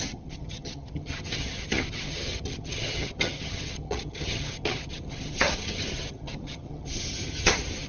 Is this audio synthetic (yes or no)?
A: yes